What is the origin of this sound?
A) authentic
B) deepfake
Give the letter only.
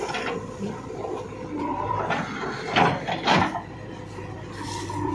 A